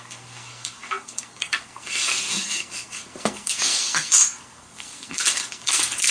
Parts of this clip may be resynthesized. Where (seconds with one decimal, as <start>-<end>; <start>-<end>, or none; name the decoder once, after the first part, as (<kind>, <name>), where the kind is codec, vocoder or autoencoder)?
0.0-6.1 (codec, SNAC)